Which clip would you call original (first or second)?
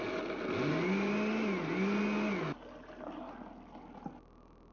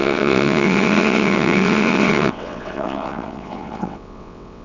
first